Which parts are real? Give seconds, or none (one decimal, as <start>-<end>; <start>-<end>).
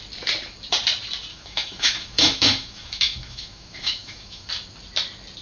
0.0-1.3; 4.5-5.4